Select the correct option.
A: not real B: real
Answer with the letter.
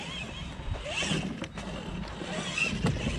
B